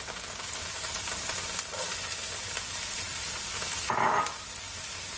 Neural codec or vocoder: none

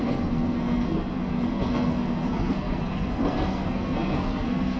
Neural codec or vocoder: codec, SNAC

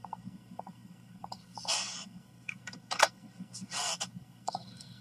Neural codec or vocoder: codec, SNAC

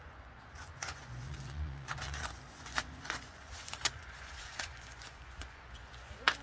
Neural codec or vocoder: vocoder, Vocos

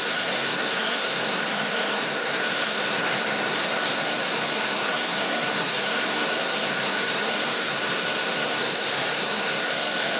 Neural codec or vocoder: codec, SNAC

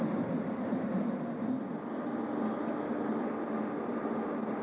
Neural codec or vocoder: none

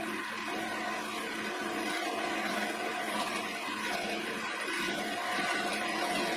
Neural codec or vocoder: none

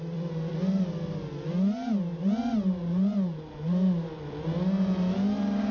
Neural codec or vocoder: none